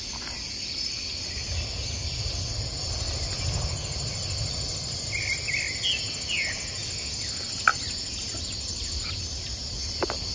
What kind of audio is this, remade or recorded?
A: recorded